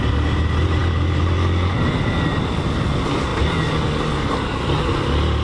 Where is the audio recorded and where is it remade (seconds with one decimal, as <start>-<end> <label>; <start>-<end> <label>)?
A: 0.0-5.4 recorded